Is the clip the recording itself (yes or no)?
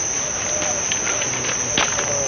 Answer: yes